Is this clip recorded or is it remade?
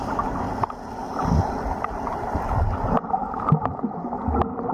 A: recorded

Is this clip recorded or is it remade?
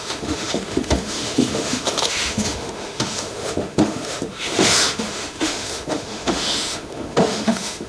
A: remade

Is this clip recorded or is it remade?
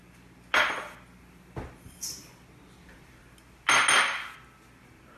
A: recorded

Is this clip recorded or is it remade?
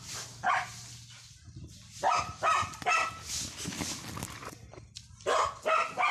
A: recorded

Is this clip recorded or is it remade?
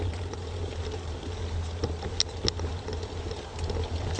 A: recorded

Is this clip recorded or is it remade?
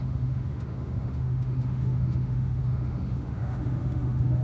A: remade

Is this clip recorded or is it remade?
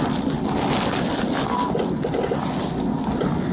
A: recorded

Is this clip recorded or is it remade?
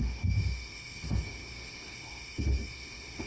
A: remade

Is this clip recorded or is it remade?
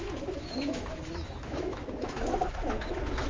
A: remade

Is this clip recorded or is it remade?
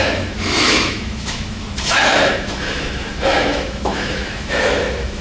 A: remade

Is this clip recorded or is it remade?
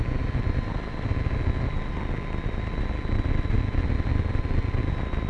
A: recorded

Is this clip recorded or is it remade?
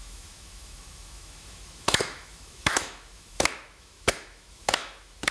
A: remade